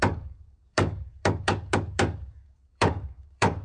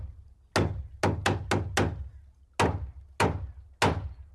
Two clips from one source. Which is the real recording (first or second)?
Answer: second